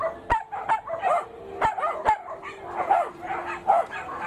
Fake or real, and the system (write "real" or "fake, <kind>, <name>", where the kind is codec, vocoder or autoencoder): real